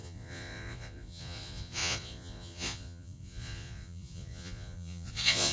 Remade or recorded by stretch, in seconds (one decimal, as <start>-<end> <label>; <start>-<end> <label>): 0.0-5.5 remade